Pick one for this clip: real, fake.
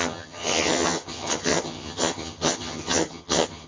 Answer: fake